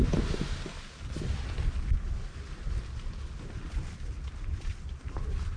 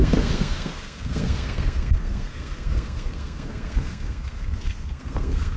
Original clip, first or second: first